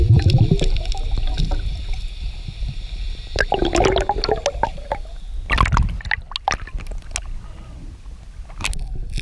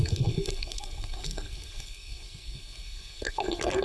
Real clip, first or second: first